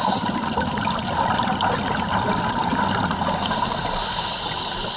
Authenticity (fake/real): real